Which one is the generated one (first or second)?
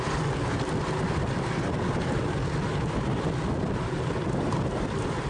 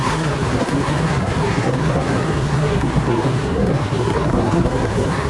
second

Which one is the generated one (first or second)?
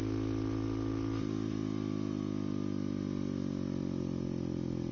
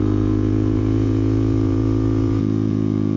second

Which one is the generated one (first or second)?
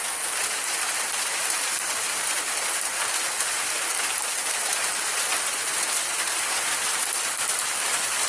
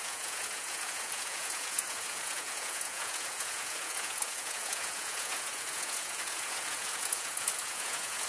second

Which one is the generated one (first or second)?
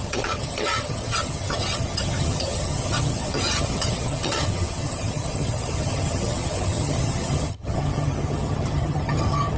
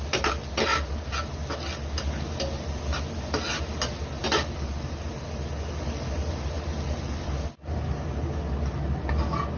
first